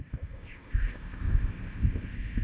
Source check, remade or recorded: remade